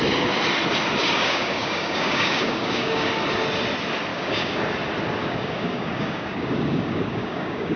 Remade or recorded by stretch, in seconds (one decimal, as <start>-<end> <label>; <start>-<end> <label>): 0.0-1.0 recorded; 1.0-3.1 remade; 3.1-4.1 recorded; 4.1-4.6 remade; 4.6-5.2 recorded; 5.2-7.8 remade